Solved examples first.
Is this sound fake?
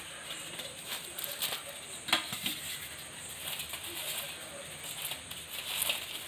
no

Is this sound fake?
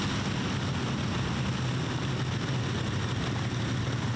no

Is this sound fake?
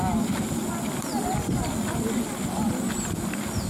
no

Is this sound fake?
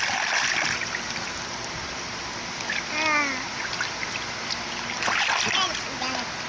no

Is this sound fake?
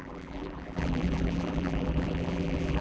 yes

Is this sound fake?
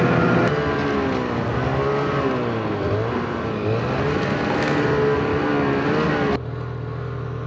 no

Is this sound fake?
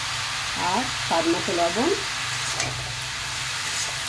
yes